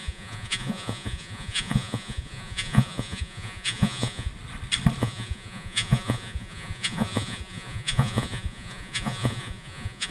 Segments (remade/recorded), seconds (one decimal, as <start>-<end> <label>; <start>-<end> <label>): 0.0-4.3 remade; 4.3-5.0 recorded; 5.0-10.1 remade